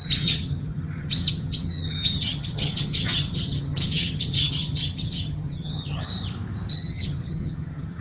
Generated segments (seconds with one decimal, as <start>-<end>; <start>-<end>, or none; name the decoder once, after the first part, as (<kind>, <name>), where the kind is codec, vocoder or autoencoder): 0.0-6.1 (vocoder, HiFi-GAN); 6.7-8.0